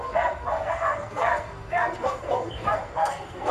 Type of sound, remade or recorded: remade